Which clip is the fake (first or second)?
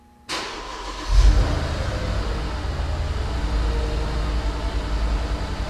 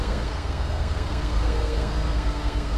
second